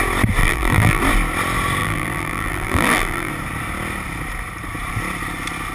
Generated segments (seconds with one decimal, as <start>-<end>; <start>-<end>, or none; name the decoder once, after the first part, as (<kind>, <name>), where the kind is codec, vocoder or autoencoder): 0.4-1.0 (vocoder, BigVGAN v2); 1.8-3.3